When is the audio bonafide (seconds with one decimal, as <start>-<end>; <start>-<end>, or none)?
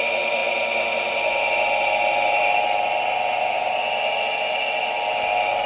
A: 0.0-5.7